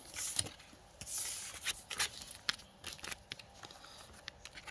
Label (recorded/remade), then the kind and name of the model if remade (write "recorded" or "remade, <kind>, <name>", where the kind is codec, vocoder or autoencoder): recorded